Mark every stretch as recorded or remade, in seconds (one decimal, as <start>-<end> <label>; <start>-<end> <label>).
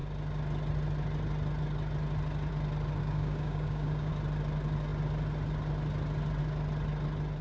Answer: 0.0-3.0 recorded; 3.0-4.1 remade; 4.1-7.4 recorded